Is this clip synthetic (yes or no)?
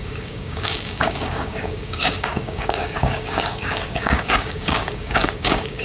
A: yes